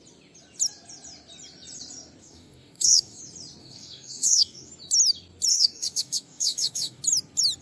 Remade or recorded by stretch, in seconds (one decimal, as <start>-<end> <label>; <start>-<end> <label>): 0.0-2.2 recorded; 2.2-3.2 remade; 3.2-3.6 recorded; 3.6-4.7 remade; 4.7-5.5 recorded; 5.5-7.0 remade; 7.0-7.6 recorded